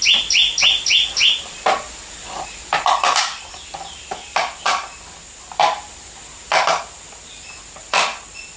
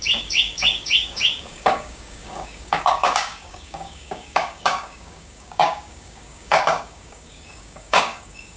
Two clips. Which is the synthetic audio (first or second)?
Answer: second